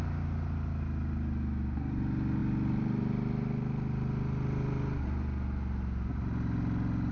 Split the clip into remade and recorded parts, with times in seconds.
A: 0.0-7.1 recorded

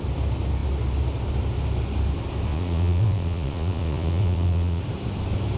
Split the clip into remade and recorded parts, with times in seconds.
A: 0.0-2.5 recorded; 2.5-4.8 remade; 4.8-5.6 recorded